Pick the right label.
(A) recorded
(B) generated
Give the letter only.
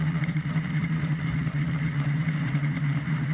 B